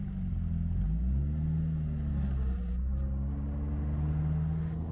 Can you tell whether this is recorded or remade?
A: recorded